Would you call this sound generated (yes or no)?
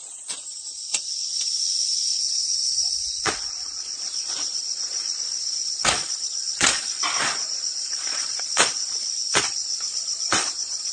yes